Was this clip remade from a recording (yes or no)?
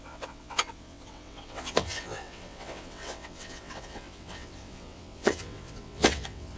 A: yes